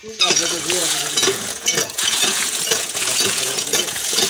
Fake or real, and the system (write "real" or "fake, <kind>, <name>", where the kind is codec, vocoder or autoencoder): fake, vocoder, Vocos